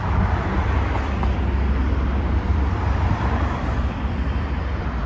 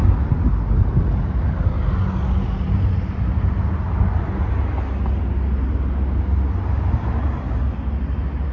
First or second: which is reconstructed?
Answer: first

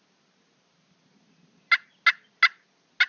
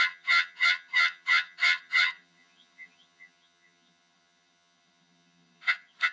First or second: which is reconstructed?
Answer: second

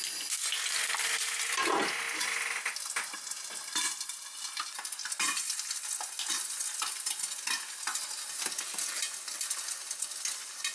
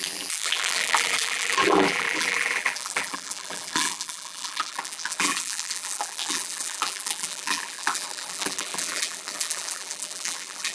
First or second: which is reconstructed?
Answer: second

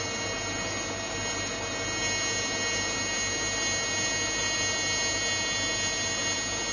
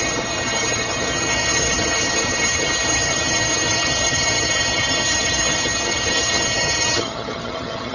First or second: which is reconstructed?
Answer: second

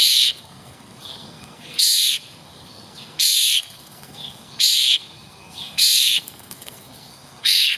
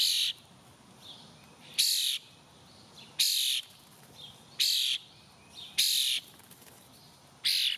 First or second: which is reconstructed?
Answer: first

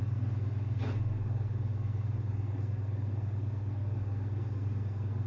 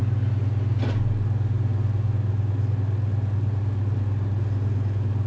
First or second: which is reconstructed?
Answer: first